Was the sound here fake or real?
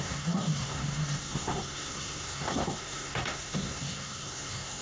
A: fake